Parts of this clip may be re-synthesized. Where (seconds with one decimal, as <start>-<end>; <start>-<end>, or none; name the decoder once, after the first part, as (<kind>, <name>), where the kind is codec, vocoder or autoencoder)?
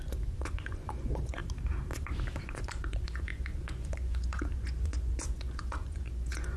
0.0-1.4 (vocoder, Vocos); 2.4-6.6